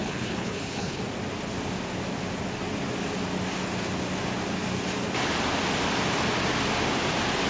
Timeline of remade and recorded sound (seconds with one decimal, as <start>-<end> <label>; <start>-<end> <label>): 0.0-1.0 remade; 1.0-7.5 recorded

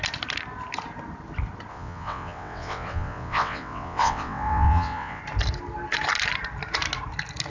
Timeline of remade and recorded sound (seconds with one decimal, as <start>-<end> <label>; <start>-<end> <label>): 0.0-1.7 recorded; 1.7-5.2 remade; 5.2-7.5 recorded

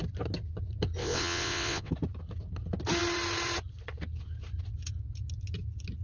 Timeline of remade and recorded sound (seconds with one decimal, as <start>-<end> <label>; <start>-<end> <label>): 0.0-1.0 recorded; 1.0-1.9 remade; 1.9-6.0 recorded